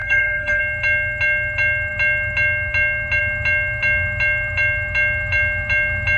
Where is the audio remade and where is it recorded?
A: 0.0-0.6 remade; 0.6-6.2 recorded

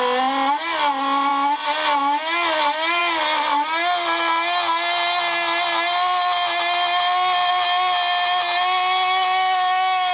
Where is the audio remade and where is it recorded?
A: 0.0-10.1 recorded

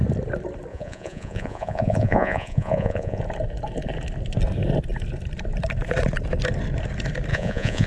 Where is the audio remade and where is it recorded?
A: 0.0-0.7 recorded; 0.7-3.2 remade; 3.2-7.3 recorded; 7.3-7.9 remade

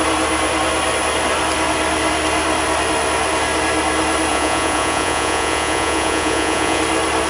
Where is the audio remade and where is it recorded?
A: 0.0-4.3 recorded; 4.3-6.8 remade; 6.8-7.3 recorded

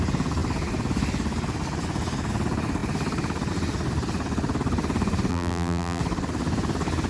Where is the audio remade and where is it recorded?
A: 0.0-5.3 recorded; 5.3-6.0 remade; 6.0-7.1 recorded

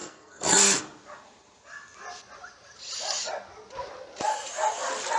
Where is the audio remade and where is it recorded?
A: 0.0-0.8 remade; 0.8-5.2 recorded